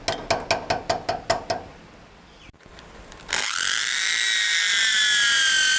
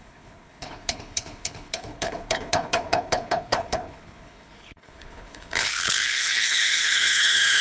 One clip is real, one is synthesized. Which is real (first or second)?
first